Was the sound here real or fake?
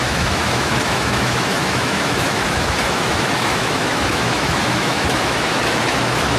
fake